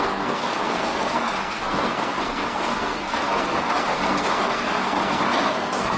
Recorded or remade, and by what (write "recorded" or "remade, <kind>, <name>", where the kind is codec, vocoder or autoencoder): remade, codec, SNAC